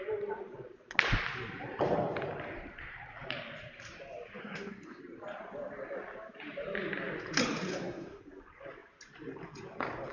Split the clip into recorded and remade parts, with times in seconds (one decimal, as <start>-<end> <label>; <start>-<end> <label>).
0.0-4.4 recorded; 4.4-5.0 remade; 5.0-7.7 recorded; 7.7-8.2 remade; 8.2-10.1 recorded